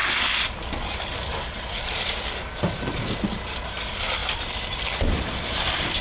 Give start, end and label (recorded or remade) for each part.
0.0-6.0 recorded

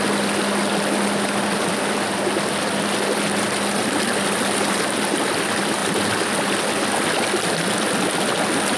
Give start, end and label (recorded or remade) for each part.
0.0-8.8 recorded

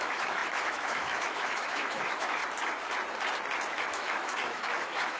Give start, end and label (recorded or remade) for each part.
0.0-2.4 remade; 2.4-3.7 recorded; 3.7-5.2 remade

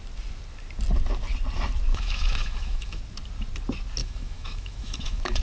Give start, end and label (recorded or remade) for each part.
0.0-1.9 recorded; 1.9-3.0 remade; 3.0-4.0 recorded; 4.0-5.4 remade

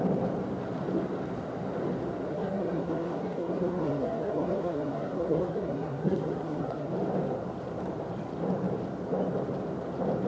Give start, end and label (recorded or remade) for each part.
0.0-2.3 recorded; 2.3-6.9 remade; 6.9-10.3 recorded

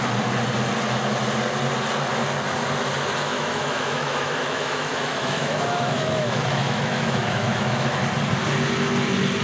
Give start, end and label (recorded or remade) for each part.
0.0-3.3 recorded; 3.3-8.0 remade; 8.0-9.4 recorded

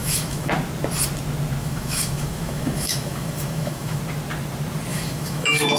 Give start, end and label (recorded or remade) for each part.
0.0-0.5 remade; 0.5-1.6 recorded; 1.6-4.0 remade; 4.0-4.9 recorded; 4.9-5.8 remade